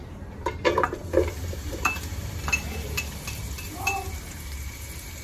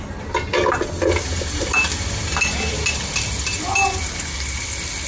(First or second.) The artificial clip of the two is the first